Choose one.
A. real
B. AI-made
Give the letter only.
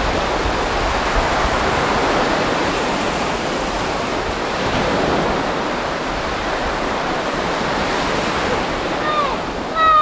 A